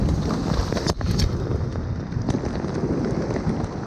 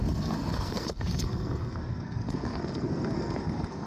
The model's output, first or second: second